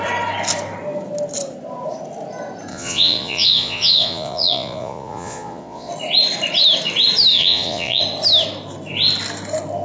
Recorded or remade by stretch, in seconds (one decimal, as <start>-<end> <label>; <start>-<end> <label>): 0.0-2.7 recorded; 2.7-5.9 remade; 5.9-7.3 recorded; 7.3-8.0 remade; 8.0-9.8 recorded